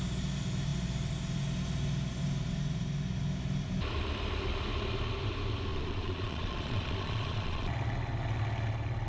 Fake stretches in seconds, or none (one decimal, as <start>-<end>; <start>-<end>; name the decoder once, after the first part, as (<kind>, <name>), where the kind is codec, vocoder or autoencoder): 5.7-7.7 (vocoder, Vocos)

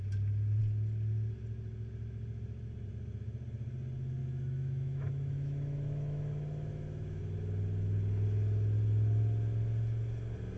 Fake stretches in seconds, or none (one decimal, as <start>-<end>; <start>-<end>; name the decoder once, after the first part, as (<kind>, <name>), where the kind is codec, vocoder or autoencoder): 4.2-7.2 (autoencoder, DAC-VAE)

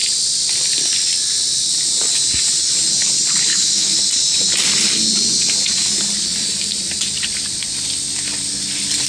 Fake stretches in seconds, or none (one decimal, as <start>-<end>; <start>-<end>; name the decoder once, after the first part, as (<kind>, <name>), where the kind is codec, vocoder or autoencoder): 3.5-4.0 (autoencoder, DAC-VAE)